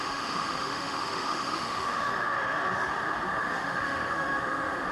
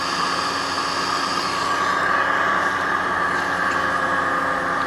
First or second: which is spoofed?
first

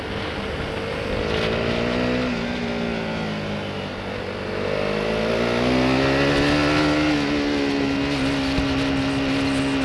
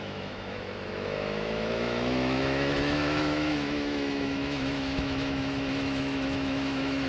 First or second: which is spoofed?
second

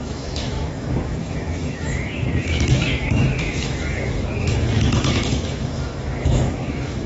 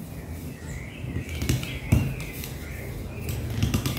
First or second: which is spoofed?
first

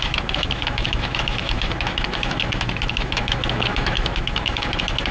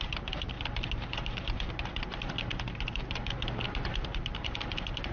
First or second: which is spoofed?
first